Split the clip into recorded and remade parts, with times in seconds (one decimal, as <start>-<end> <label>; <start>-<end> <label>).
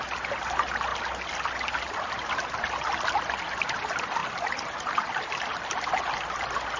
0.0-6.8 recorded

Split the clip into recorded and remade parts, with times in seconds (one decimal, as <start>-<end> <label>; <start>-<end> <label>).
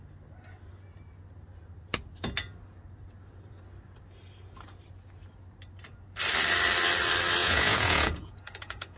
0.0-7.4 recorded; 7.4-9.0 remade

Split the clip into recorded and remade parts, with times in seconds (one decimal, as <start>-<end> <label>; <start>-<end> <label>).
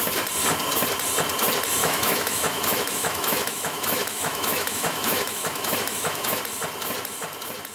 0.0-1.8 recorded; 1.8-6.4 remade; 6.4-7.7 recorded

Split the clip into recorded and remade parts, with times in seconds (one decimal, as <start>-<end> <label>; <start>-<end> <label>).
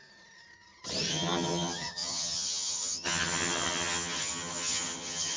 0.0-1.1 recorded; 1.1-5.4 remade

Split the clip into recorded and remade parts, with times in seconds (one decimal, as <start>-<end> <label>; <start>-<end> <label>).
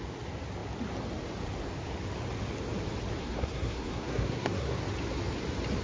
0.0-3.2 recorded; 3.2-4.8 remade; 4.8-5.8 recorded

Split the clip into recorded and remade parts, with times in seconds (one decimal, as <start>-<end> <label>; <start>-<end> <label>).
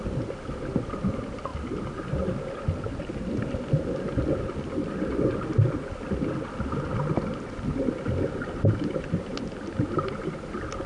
0.0-10.9 recorded